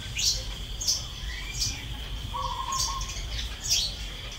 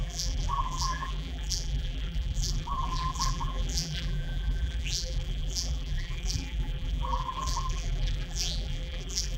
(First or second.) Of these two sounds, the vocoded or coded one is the second